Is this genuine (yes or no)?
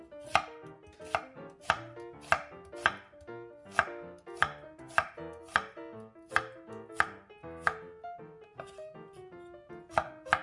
yes